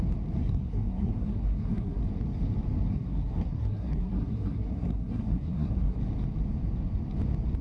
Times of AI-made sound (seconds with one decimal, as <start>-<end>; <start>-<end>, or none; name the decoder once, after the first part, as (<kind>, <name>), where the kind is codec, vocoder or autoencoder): 0.4-2.0 (codec, SNAC); 2.9-6.0